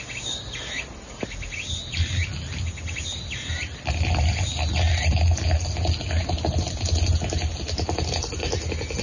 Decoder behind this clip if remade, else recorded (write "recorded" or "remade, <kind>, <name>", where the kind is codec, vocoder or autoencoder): recorded